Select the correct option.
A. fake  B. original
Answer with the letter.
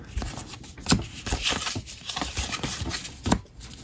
B